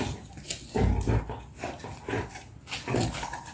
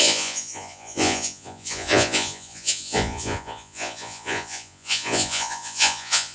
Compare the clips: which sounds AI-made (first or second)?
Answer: second